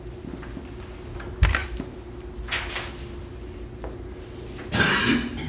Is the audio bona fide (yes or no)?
yes